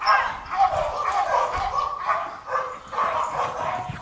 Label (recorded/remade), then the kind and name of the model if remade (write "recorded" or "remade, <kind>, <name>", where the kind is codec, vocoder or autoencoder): recorded